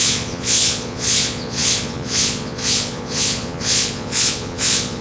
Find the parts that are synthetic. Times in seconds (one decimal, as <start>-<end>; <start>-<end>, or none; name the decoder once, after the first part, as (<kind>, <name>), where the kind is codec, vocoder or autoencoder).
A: 0.0-5.0 (vocoder, Vocos)